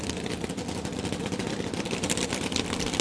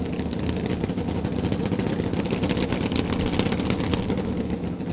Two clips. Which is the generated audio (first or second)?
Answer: first